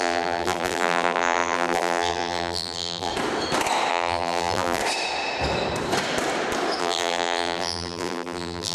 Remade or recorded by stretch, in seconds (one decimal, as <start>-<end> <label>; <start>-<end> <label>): 0.0-3.1 remade; 3.1-3.9 recorded; 3.9-4.8 remade; 4.8-6.8 recorded; 6.8-8.7 remade